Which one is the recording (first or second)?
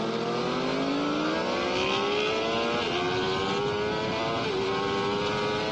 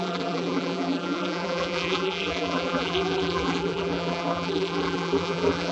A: first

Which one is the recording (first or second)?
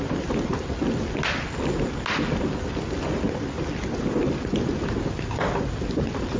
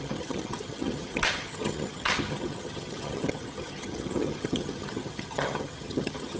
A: first